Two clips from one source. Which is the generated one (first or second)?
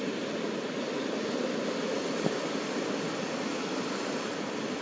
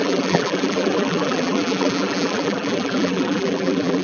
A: second